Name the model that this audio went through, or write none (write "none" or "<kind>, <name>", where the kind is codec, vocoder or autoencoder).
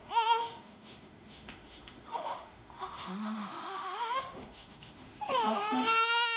autoencoder, DAC-VAE